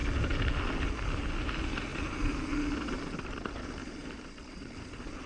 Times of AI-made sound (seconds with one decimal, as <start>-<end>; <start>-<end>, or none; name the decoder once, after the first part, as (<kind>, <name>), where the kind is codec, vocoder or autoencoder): 1.9-3.3 (vocoder, BigVGAN v2); 4.0-4.7